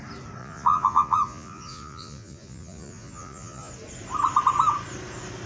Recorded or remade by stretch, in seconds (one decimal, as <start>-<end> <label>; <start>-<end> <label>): 0.0-0.4 recorded; 0.4-3.7 remade; 3.7-5.5 recorded